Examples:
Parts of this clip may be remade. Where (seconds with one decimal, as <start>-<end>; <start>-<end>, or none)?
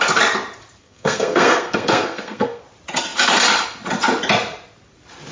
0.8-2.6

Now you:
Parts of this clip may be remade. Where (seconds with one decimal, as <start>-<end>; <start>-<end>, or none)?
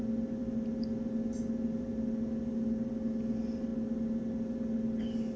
none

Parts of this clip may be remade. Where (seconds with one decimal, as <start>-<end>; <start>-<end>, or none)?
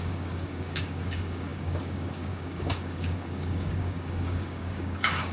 0.0-5.3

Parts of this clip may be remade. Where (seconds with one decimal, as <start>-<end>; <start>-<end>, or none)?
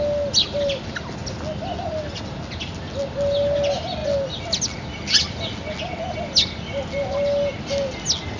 none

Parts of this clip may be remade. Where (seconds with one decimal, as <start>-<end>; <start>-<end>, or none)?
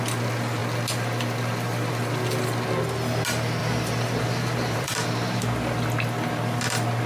3.6-4.9